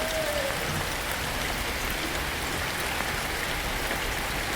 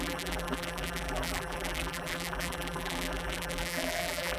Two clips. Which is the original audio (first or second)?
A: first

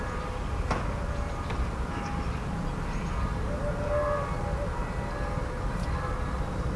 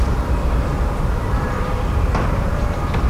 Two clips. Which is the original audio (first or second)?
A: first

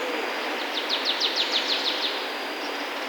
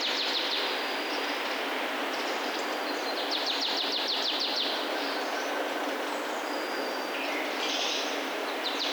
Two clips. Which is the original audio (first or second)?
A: first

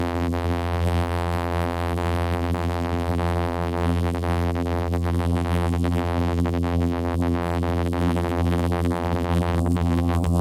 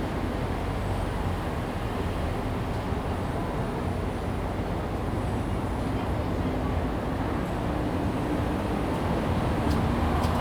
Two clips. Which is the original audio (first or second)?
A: second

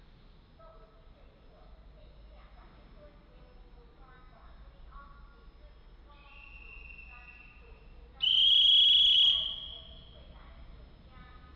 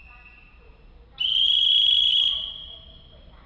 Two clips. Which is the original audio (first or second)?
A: first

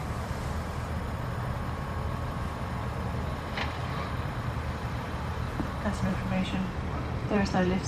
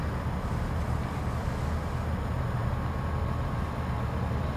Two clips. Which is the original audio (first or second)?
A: second